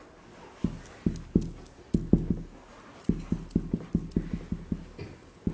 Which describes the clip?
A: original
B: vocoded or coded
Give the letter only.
A